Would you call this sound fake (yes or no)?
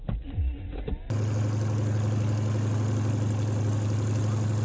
no